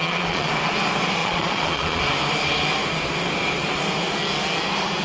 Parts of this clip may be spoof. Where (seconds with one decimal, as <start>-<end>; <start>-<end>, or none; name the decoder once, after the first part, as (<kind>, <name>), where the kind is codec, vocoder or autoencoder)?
0.0-0.5 (vocoder, Vocos); 1.2-2.0